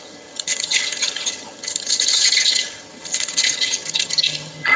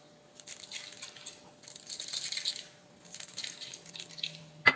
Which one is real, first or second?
second